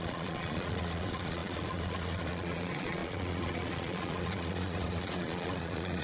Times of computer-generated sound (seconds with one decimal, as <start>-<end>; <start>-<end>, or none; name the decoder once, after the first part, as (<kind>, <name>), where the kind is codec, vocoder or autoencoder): 0.0-6.0 (vocoder, Vocos)